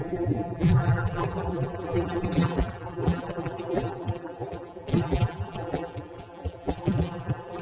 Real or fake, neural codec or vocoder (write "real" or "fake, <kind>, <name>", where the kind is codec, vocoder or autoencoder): fake, vocoder, BigVGAN v2